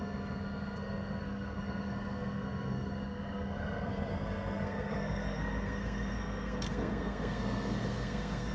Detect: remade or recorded remade